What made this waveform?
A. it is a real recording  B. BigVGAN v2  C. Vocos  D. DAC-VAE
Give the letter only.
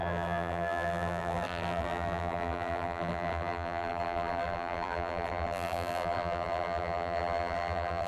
B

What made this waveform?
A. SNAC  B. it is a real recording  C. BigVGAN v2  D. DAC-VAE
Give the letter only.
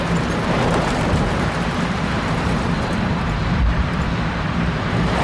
C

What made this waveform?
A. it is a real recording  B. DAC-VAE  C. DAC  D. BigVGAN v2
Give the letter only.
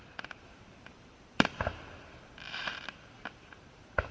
D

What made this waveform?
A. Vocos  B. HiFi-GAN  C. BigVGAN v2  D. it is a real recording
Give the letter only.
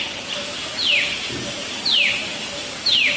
C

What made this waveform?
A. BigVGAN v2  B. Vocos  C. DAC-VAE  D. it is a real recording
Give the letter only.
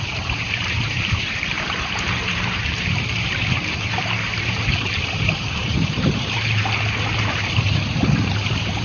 A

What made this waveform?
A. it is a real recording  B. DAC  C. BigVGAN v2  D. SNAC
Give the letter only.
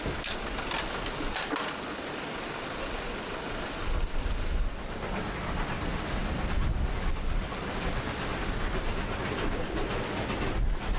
A